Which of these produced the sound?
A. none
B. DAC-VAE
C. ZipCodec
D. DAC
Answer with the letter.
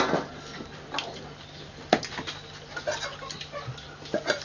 A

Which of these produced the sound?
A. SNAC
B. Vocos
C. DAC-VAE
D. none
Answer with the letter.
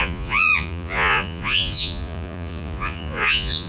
B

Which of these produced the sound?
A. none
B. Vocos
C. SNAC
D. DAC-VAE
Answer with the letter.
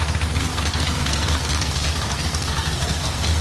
C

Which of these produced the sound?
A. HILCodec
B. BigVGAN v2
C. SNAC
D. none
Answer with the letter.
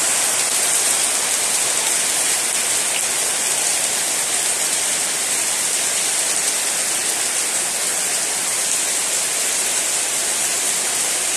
D